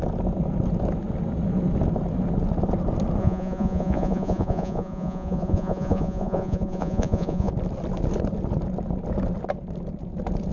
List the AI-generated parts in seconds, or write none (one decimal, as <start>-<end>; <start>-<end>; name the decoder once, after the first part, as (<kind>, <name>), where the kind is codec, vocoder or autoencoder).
3.2-7.5 (vocoder, Vocos)

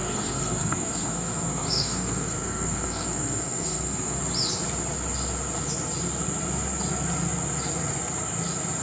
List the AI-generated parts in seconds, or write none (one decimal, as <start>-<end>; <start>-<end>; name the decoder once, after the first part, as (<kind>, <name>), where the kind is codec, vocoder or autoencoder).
0.0-4.2 (codec, SNAC)

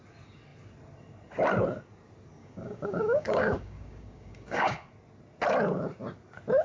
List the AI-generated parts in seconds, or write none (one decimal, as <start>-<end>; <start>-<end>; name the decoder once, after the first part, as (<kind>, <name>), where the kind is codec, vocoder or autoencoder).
2.4-4.9 (codec, DAC)

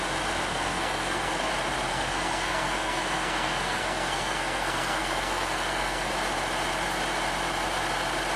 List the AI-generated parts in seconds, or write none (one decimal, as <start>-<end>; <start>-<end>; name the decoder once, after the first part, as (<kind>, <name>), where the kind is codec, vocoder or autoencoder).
0.5-1.5 (codec, SNAC); 1.9-6.1

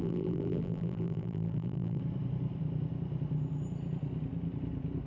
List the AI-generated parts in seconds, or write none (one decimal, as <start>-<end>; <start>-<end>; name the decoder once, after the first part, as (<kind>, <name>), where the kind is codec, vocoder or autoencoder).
0.0-2.0 (vocoder, BigVGAN v2)

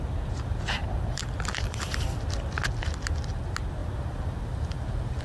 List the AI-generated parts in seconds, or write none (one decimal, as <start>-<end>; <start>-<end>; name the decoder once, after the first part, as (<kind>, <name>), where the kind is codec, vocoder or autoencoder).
0.8-2.2 (vocoder, BigVGAN v2); 3.8-4.4